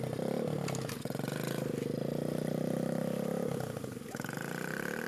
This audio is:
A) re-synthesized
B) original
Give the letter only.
B